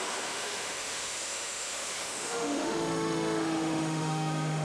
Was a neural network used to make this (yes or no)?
yes